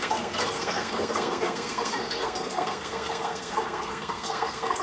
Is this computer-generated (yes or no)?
yes